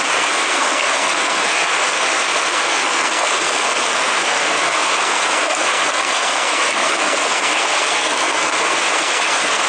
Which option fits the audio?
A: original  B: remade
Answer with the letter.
B